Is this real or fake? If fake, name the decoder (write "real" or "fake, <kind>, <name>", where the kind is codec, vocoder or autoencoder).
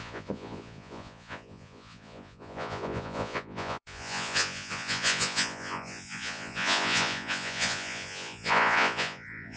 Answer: fake, vocoder, Vocos